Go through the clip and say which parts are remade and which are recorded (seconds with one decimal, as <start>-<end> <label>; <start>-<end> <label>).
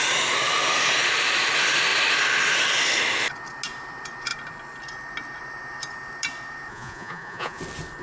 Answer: 0.0-6.7 recorded; 6.7-7.6 remade; 7.6-8.0 recorded